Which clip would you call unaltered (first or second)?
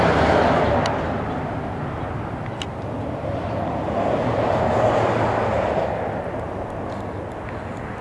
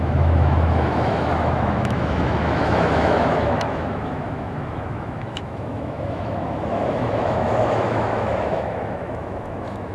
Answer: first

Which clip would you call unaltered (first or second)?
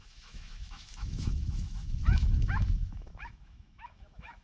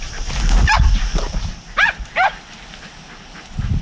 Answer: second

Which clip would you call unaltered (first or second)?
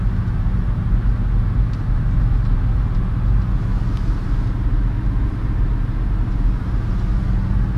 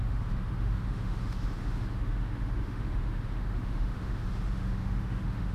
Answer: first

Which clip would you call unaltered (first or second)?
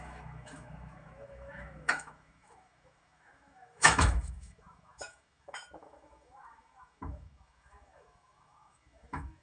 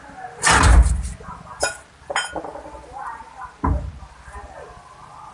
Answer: second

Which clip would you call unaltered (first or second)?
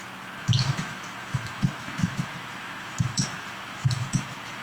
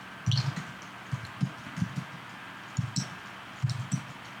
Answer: second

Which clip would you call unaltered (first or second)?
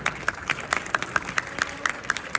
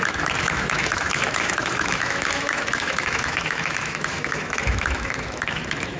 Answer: first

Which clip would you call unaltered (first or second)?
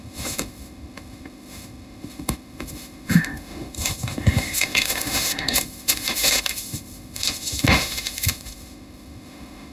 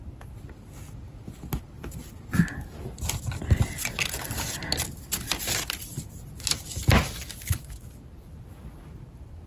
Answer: second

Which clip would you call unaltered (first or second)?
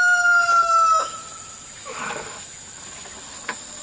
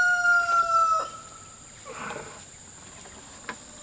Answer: second